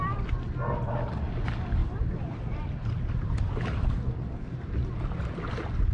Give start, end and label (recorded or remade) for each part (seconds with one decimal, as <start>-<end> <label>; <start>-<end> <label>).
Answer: 0.0-1.8 recorded; 1.8-3.8 remade; 3.8-5.9 recorded